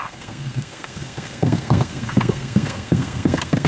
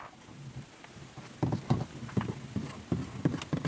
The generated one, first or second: first